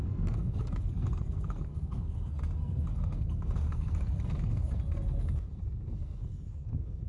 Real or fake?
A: fake